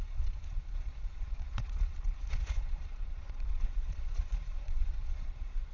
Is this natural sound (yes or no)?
no